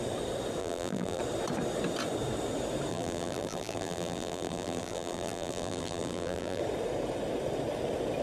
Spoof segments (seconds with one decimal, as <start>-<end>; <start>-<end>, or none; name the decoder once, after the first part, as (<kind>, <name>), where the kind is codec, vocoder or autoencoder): 0.6-1.2 (vocoder, BigVGAN v2); 2.9-6.6